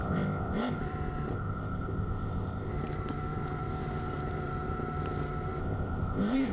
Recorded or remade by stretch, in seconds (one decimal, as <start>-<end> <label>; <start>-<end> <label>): 0.0-0.8 remade; 0.8-1.3 recorded; 1.3-2.7 remade; 2.7-5.6 recorded; 5.6-6.5 remade